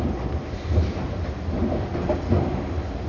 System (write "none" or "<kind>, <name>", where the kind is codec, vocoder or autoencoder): none